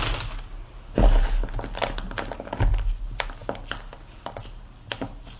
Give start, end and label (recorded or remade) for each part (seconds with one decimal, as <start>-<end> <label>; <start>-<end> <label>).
0.0-5.4 recorded